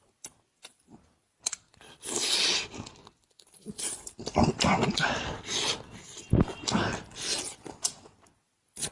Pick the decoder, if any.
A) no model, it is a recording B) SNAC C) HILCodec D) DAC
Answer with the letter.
A